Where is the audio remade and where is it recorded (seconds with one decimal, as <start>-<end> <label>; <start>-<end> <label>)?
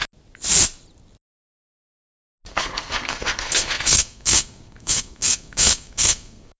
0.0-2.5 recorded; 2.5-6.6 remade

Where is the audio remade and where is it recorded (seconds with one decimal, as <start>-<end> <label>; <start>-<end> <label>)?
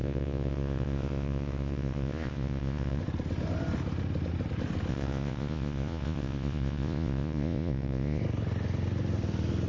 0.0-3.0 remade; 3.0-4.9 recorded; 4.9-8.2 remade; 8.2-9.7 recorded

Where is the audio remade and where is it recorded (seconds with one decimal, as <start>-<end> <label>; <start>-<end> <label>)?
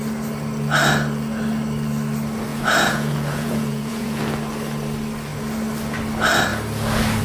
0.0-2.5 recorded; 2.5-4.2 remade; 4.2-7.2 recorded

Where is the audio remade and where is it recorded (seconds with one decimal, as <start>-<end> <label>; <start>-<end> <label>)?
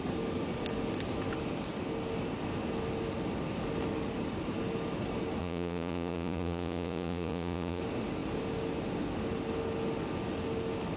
0.0-5.4 recorded; 5.4-7.8 remade; 7.8-11.0 recorded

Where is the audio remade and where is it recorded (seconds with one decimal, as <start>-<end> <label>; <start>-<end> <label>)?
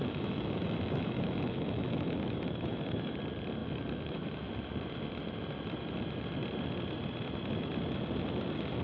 0.0-3.2 remade; 3.2-3.6 recorded; 3.6-4.5 remade; 4.5-8.8 recorded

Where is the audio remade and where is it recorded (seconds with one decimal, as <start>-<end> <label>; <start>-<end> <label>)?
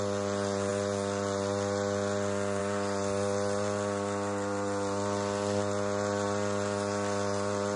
0.0-7.8 recorded